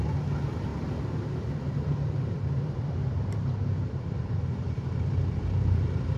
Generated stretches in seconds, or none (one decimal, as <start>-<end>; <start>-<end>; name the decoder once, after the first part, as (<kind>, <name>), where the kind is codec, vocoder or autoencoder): 0.0-6.2 (vocoder, BigVGAN v2)